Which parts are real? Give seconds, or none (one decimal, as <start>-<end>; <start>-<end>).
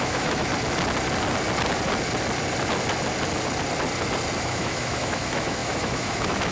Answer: 0.5-4.4